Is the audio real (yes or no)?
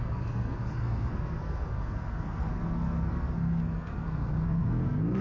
no